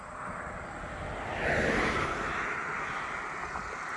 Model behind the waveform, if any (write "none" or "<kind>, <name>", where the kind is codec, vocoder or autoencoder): none